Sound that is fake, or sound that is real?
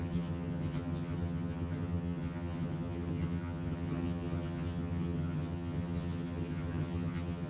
fake